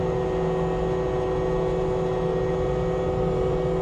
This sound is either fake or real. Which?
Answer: real